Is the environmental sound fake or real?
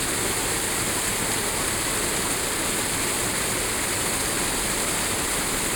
real